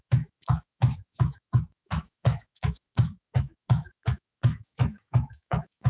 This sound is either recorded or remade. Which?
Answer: remade